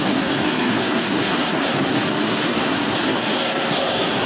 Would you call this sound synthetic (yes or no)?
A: yes